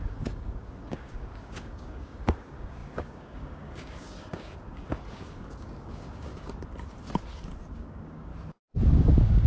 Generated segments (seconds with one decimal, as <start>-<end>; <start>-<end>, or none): 0.0-6.3; 7.7-8.3; 8.9-9.5